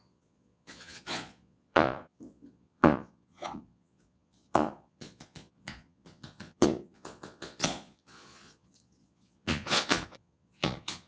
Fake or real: fake